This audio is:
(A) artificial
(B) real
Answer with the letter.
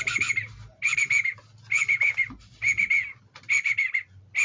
B